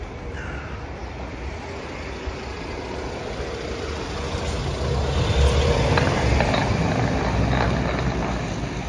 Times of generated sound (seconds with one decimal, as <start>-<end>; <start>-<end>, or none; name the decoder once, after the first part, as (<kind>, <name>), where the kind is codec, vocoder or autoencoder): none